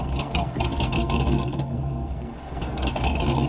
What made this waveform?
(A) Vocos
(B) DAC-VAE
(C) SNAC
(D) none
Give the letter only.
C